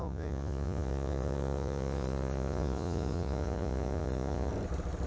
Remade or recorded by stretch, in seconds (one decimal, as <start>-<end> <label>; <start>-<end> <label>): 0.0-4.5 remade; 4.5-5.1 recorded